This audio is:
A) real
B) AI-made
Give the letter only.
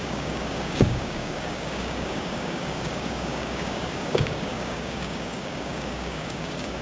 B